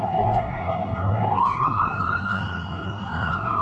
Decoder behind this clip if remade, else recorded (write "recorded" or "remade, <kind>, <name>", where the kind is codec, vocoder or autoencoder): remade, codec, SNAC